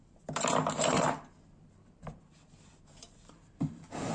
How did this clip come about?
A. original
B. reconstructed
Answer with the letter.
B